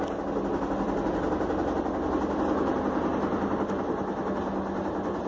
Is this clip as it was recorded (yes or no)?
yes